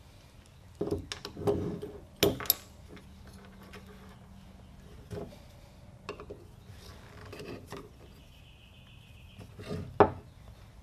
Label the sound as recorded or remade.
recorded